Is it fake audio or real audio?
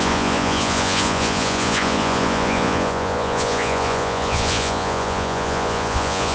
fake